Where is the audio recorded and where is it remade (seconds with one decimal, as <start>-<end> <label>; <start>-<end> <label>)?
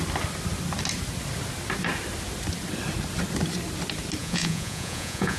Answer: 0.0-4.2 recorded; 4.2-5.4 remade